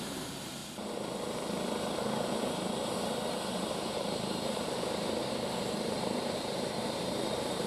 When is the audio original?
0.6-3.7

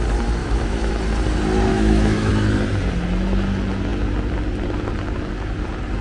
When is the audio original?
0.0-0.4; 0.9-1.7; 2.3-6.0

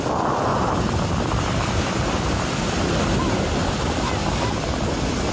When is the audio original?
0.0-5.3

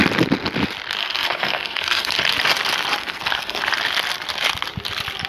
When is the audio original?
0.0-1.0; 2.1-3.0; 3.6-5.3

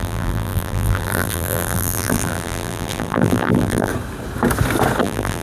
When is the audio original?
3.9-5.0

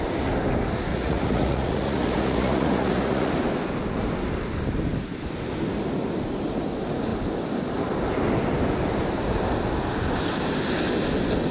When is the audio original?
0.0-0.9; 3.3-11.5

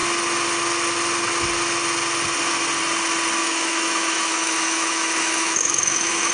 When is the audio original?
0.0-3.4

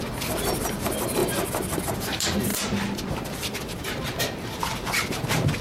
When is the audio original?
1.2-1.8; 2.5-3.1